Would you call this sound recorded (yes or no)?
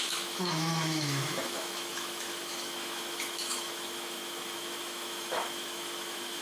no